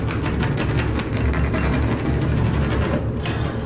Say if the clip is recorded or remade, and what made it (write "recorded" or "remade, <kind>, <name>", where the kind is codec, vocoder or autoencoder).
recorded